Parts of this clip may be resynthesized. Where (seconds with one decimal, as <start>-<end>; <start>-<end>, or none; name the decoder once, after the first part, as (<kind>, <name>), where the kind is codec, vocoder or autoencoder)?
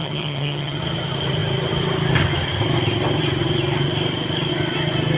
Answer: 0.0-0.8 (vocoder, HiFi-GAN)